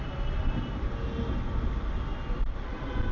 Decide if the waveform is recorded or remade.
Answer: recorded